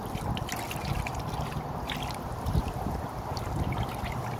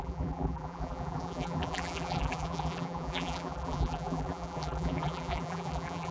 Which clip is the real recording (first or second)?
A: first